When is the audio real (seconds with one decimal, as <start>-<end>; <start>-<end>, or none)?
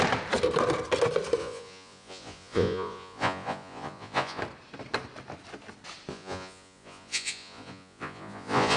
0.0-1.4; 4.4-6.1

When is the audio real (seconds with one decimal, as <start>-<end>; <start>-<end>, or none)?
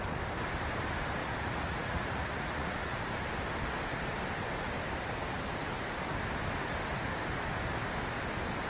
0.0-1.2; 3.0-8.7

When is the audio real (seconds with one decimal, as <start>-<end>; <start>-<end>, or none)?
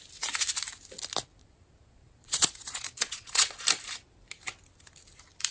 0.0-1.4; 3.5-5.5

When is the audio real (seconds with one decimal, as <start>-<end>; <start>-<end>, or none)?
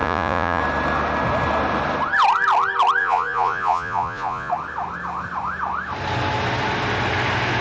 0.6-3.0; 4.5-7.6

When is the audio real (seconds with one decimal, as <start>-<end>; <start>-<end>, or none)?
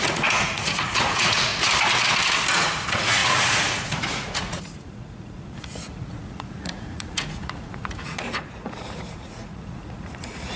1.5-2.5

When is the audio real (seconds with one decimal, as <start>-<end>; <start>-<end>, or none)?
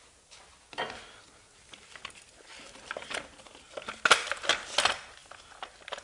0.0-6.0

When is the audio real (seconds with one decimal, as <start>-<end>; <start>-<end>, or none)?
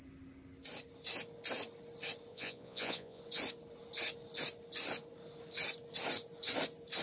0.0-2.3; 3.2-7.0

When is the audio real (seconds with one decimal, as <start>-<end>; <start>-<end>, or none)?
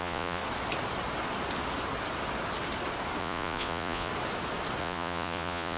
0.4-3.2; 4.1-4.8